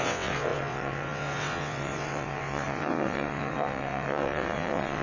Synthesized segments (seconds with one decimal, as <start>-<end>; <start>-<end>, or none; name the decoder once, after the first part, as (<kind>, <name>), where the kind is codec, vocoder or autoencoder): 0.0-5.0 (vocoder, WaveNeXt)